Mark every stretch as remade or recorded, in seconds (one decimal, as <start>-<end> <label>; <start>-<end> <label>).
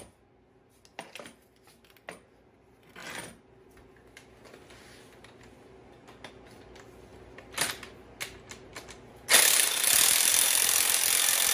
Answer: 0.0-11.5 recorded